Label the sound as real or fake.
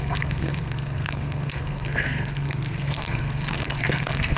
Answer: fake